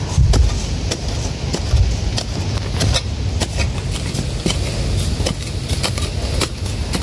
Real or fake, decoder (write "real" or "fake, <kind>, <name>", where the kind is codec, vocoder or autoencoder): real